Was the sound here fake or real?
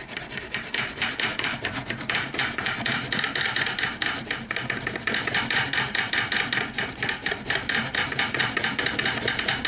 fake